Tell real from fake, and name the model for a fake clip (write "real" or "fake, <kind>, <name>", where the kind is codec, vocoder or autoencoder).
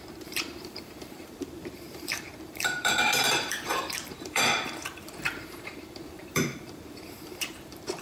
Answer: fake, vocoder, BigVGAN v2